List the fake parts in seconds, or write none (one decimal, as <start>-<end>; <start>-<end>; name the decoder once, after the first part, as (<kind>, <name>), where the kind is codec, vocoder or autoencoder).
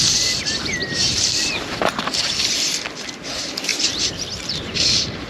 0.0-0.8 (vocoder, BigVGAN v2); 2.7-3.7; 4.4-5.3